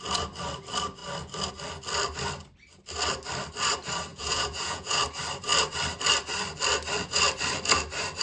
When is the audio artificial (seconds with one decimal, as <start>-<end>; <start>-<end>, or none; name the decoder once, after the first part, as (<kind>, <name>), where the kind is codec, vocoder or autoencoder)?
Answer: 4.1-5.0 (vocoder, Vocos)